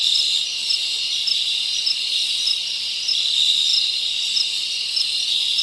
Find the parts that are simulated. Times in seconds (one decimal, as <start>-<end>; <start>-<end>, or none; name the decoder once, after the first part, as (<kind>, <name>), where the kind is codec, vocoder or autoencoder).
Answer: none